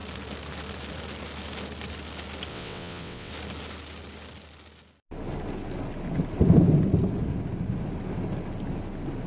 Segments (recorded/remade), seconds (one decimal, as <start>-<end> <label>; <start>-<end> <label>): 0.0-2.5 recorded; 2.5-3.3 remade; 3.3-9.3 recorded